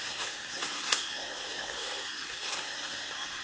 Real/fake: fake